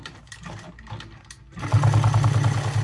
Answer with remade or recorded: recorded